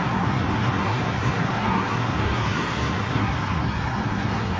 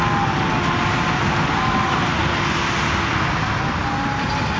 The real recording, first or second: second